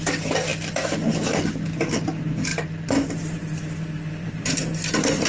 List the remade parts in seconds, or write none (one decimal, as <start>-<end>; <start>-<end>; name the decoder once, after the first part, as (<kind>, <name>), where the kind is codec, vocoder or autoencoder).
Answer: 2.5-4.5 (vocoder, BigVGAN v2)